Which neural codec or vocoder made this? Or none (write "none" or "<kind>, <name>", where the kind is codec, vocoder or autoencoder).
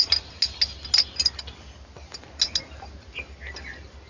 none